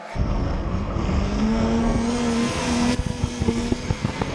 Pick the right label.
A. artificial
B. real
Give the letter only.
A